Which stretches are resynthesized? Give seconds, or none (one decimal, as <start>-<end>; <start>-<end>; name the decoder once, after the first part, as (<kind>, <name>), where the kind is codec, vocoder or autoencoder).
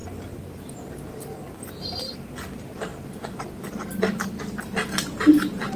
none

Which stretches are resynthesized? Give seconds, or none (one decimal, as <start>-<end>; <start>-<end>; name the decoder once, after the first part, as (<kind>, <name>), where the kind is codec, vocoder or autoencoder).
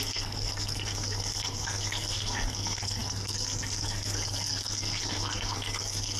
0.0-6.2 (codec, SNAC)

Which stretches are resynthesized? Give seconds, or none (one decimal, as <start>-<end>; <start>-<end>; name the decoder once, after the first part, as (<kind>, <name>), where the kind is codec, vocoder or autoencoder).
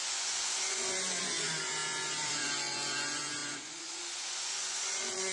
0.0-5.3 (vocoder, Vocos)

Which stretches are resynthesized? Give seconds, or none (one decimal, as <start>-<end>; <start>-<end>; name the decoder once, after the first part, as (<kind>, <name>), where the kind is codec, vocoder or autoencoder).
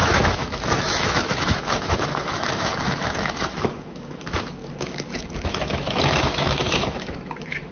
0.0-7.7 (autoencoder, DAC-VAE)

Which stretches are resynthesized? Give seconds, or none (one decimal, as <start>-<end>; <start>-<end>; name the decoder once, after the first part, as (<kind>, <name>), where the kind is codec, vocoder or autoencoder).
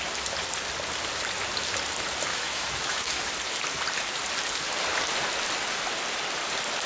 2.3-3.3 (autoencoder, DAC-VAE)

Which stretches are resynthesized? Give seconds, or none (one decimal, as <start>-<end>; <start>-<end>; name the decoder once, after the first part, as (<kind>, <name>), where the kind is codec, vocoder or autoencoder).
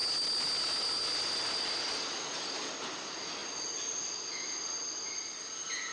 none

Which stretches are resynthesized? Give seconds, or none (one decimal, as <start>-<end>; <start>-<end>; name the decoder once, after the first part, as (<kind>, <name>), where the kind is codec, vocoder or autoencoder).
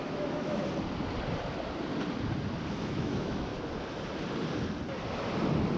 0.0-0.6 (autoencoder, DAC-VAE); 2.8-3.5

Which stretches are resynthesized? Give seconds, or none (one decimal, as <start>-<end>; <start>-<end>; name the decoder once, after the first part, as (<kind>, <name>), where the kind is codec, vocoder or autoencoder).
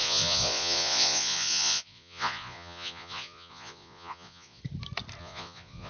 0.0-4.6 (vocoder, Vocos); 5.2-5.9